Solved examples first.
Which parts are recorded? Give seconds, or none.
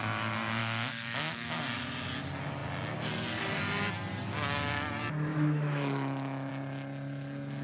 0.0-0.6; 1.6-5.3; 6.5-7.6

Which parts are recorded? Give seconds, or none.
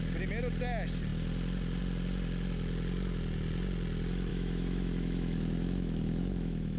0.0-4.3